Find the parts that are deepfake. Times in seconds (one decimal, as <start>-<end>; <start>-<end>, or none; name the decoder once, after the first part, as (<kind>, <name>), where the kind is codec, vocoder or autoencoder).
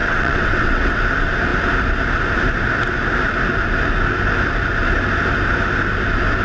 0.0-1.0 (vocoder, WaveNeXt)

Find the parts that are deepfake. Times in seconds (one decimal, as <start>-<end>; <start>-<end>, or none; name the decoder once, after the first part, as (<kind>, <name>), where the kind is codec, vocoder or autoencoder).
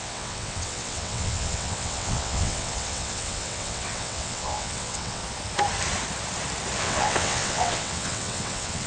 0.0-5.2 (vocoder, WaveNeXt); 6.8-8.9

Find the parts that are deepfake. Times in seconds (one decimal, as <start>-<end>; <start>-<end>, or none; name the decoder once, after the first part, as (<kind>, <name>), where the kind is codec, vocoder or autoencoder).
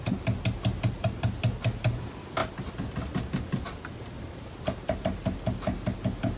none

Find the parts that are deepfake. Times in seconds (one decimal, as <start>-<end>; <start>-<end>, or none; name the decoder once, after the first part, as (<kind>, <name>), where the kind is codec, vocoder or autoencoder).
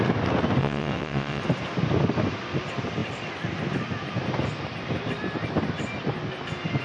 0.6-1.4 (vocoder, WaveNeXt)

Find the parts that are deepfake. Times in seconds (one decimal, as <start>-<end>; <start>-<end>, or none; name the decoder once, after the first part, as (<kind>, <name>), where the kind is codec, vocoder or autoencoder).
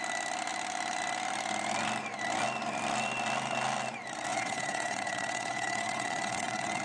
4.3-6.8 (vocoder, WaveNeXt)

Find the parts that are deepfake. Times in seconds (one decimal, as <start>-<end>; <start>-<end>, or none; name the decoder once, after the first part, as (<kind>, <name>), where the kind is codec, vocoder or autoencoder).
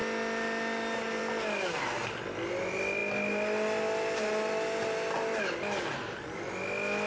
none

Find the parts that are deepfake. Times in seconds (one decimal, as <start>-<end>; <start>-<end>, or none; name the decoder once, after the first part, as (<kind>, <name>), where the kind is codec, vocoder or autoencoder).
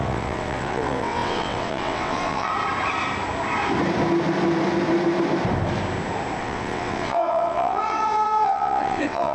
0.0-2.5 (vocoder, WaveNeXt); 6.4-9.3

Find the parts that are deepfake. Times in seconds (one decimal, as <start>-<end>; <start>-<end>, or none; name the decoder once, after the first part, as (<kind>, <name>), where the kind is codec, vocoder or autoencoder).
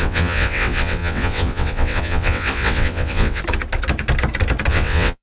0.0-3.4 (vocoder, WaveNeXt); 4.7-5.2